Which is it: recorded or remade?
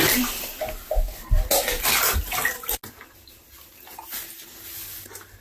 recorded